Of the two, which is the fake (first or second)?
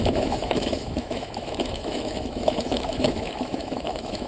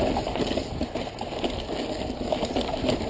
first